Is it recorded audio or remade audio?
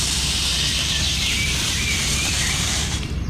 remade